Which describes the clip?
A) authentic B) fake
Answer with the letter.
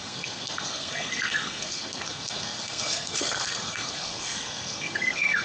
B